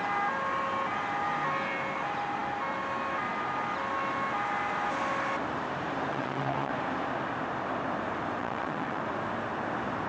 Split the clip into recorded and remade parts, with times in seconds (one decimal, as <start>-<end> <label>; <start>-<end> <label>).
0.0-6.1 recorded; 6.1-6.7 remade; 6.7-8.4 recorded; 8.4-9.0 remade; 9.0-10.1 recorded

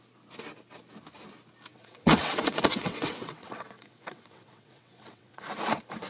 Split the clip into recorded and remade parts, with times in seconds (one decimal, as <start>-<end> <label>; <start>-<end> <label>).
0.0-1.7 recorded; 1.7-5.4 remade; 5.4-6.1 recorded

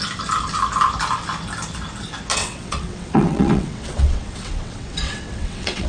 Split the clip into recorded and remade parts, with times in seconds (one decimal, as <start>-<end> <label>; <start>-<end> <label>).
0.0-2.3 recorded; 2.3-5.9 remade

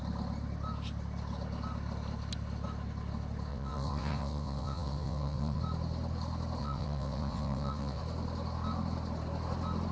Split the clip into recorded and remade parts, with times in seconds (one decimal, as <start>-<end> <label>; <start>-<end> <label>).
0.0-3.5 recorded; 3.5-5.6 remade; 5.6-6.6 recorded; 6.6-8.0 remade; 8.0-9.9 recorded

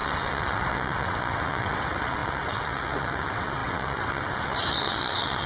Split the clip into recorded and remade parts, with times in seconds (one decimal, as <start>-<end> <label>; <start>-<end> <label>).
0.0-5.5 remade